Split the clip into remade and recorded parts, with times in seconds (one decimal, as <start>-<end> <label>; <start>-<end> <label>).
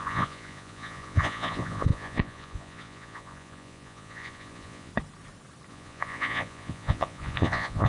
0.0-4.9 remade; 4.9-5.7 recorded; 5.7-7.9 remade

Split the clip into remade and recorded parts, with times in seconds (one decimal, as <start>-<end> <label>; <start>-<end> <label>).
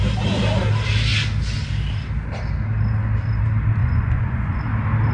0.0-3.8 recorded; 3.8-4.6 remade; 4.6-5.1 recorded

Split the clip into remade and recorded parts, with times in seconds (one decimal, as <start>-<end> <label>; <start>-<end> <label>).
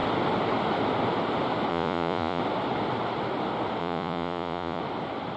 0.0-1.7 recorded; 1.7-2.4 remade; 2.4-3.8 recorded; 3.8-4.8 remade; 4.8-5.4 recorded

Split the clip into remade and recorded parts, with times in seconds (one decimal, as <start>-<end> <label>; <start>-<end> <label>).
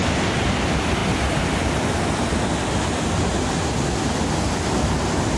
0.0-5.4 recorded